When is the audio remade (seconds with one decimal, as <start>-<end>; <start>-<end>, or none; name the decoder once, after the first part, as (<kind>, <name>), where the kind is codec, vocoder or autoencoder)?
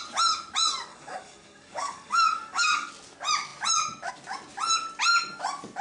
0.9-2.9 (codec, DAC)